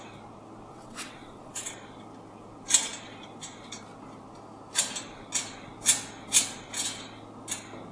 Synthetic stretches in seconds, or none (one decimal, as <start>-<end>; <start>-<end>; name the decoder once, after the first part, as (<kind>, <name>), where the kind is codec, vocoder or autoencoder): 0.7-1.7 (vocoder, WaveNeXt)